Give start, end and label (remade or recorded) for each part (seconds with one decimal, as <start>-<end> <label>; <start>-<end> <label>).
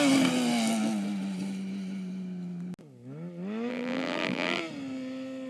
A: 0.0-3.7 recorded; 3.7-4.6 remade; 4.6-5.5 recorded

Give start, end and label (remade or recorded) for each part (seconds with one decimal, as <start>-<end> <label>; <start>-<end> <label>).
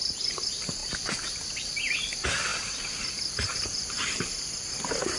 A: 0.0-2.5 remade; 2.5-3.1 recorded; 3.1-5.2 remade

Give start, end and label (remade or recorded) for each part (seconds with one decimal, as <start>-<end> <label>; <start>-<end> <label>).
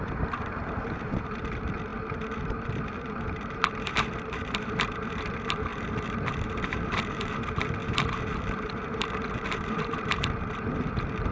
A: 0.0-11.3 remade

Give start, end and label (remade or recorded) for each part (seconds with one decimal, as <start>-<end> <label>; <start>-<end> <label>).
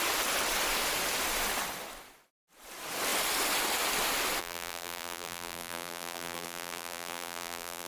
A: 0.0-4.4 recorded; 4.4-7.9 remade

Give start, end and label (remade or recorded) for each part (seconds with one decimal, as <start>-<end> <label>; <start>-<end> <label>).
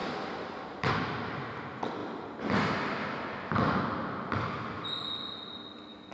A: 0.0-0.9 remade; 0.9-6.1 recorded